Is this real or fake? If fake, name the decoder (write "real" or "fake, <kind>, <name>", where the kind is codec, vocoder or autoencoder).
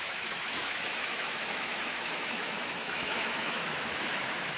fake, autoencoder, DAC-VAE